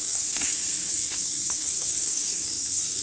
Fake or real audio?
fake